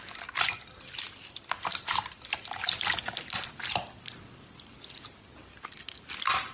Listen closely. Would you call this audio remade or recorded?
recorded